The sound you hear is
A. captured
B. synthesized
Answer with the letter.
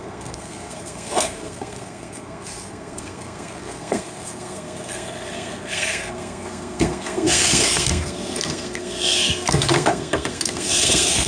B